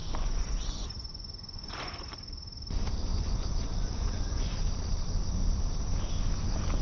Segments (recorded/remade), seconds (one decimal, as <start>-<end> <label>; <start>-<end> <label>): 0.0-1.9 remade; 1.9-3.1 recorded; 3.1-4.6 remade; 4.6-6.8 recorded